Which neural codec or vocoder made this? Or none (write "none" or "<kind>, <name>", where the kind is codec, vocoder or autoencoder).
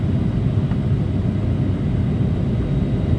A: none